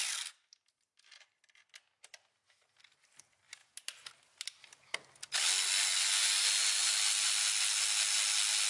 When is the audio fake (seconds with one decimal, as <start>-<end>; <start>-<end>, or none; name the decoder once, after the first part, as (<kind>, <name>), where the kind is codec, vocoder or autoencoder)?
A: none